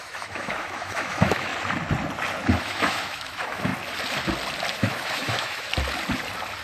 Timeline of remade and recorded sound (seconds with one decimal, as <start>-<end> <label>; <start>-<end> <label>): 0.0-1.5 remade; 1.5-2.6 recorded; 2.6-3.7 remade; 3.7-4.7 recorded; 4.7-5.7 remade; 5.7-6.6 recorded